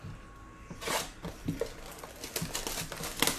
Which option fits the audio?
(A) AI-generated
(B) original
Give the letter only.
B